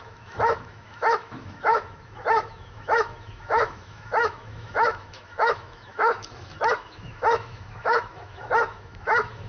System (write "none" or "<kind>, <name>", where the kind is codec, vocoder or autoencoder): autoencoder, DAC-VAE